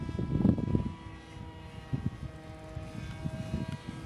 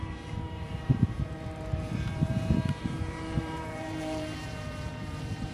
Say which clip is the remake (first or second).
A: second